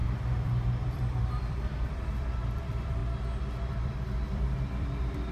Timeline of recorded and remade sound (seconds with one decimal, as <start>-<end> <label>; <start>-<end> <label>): 0.0-3.0 remade; 3.0-3.7 recorded; 3.7-5.3 remade